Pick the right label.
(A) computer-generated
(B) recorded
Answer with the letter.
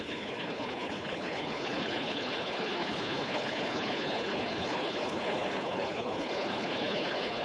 A